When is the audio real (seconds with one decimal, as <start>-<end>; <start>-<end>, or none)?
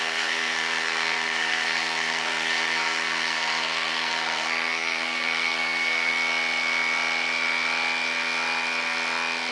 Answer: 6.1-9.5